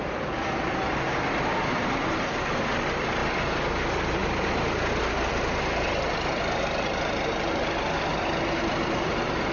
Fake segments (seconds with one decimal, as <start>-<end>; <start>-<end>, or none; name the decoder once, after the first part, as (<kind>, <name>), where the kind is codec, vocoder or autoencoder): none

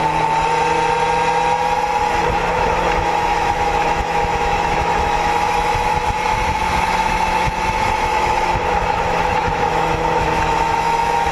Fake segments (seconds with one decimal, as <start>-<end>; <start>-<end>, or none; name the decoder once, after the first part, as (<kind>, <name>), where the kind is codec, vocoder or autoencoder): 2.5-11.3 (autoencoder, DAC-VAE)

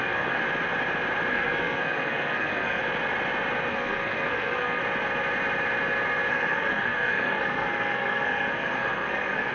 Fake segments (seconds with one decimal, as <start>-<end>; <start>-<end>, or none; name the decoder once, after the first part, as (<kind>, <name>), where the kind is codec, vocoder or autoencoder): 0.0-0.4 (codec, SNAC); 1.3-2.8; 3.7-4.8; 6.3-9.5

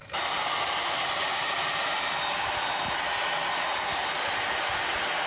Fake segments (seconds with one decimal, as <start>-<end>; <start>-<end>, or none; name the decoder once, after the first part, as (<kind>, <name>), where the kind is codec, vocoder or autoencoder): none

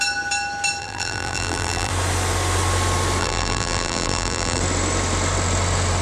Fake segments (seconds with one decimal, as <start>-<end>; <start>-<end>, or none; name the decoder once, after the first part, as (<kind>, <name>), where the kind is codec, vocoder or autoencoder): 0.8-1.9 (vocoder, BigVGAN v2); 3.2-4.6

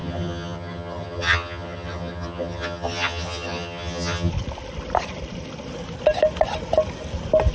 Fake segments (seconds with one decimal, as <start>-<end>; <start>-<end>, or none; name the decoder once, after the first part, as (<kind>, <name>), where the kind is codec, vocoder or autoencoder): 0.0-4.3 (vocoder, HiFi-GAN)